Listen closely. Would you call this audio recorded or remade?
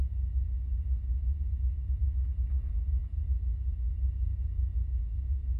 remade